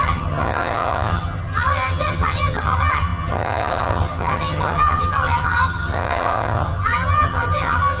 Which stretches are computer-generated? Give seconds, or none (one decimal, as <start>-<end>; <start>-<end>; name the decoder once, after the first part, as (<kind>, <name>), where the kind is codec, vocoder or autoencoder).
0.0-8.0 (vocoder, HiFi-GAN)